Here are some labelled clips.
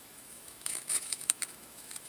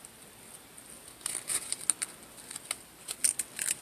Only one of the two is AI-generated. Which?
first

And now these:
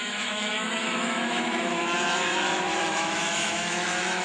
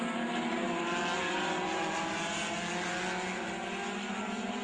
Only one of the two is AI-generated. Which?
first